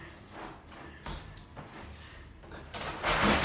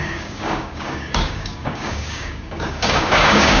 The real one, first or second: first